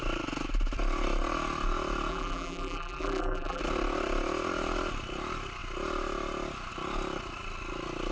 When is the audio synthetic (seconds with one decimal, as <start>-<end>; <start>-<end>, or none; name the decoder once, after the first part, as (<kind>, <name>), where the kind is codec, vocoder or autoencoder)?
2.1-3.6 (vocoder, BigVGAN v2)

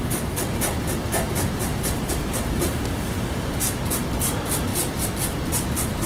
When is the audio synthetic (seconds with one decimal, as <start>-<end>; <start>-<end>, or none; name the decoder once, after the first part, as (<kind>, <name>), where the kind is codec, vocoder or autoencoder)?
1.7-3.4 (vocoder, BigVGAN v2)

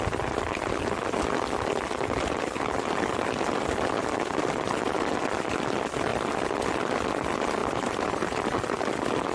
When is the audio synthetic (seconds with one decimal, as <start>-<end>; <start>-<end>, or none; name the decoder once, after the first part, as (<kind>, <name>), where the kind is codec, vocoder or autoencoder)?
7.6-8.6 (vocoder, BigVGAN v2)